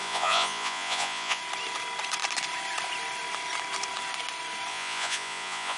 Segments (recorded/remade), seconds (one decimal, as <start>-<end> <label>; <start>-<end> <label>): 0.0-1.4 remade; 1.4-4.7 recorded; 4.7-5.8 remade